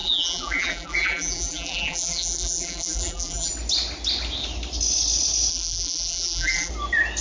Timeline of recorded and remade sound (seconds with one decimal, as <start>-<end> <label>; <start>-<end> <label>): 0.0-3.5 remade; 3.5-5.5 recorded; 5.5-6.7 remade; 6.7-7.2 recorded